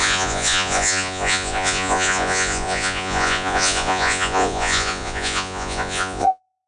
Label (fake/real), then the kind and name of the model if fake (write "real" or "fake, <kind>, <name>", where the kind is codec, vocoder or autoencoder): fake, vocoder, Vocos